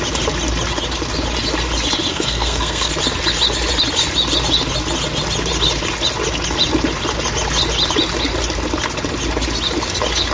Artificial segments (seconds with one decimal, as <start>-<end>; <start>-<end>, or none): 2.1-2.9